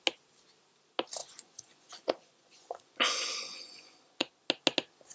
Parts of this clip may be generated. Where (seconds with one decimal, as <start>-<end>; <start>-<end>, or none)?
1.2-4.3